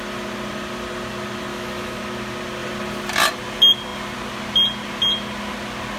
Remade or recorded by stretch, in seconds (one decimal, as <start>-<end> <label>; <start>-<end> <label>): 0.0-1.5 recorded; 1.5-2.0 remade; 2.0-6.0 recorded